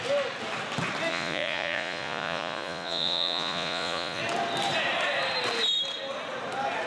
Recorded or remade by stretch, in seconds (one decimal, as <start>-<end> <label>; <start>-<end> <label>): 0.0-1.1 recorded; 1.1-4.2 remade; 4.2-6.9 recorded